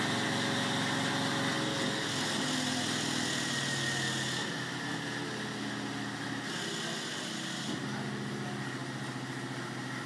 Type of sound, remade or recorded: recorded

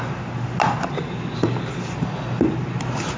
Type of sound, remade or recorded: recorded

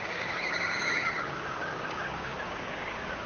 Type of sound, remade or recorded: remade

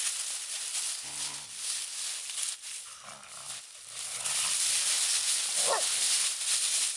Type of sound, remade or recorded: recorded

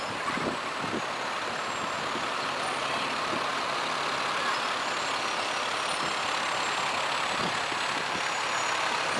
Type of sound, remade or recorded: recorded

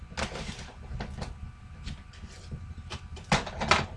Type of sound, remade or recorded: recorded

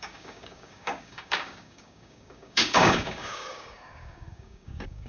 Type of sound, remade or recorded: remade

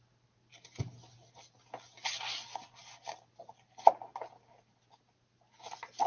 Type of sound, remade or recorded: recorded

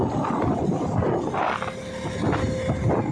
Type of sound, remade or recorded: recorded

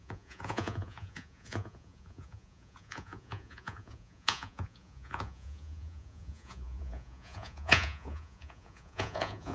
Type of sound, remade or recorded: remade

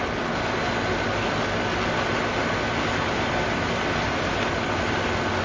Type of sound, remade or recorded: recorded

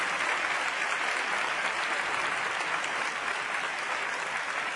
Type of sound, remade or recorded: remade